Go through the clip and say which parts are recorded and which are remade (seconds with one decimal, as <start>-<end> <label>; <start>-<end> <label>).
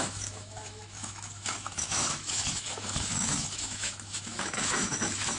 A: 0.0-5.4 remade